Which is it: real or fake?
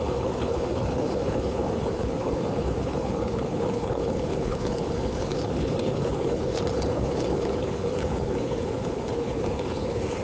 fake